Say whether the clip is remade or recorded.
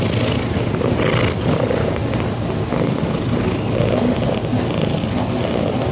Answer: recorded